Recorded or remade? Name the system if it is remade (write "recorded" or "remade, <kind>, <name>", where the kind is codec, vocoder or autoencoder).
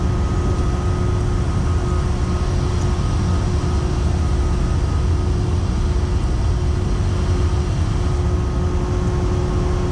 recorded